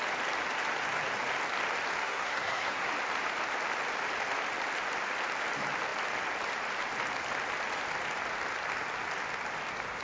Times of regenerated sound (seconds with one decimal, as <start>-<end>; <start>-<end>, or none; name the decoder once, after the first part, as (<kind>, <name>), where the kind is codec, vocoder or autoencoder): 2.0-2.9 (codec, SNAC)